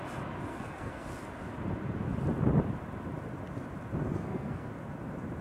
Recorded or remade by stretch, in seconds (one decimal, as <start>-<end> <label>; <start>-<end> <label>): 0.0-0.5 recorded; 0.5-1.1 remade; 1.1-4.1 recorded; 4.1-4.7 remade; 4.7-5.4 recorded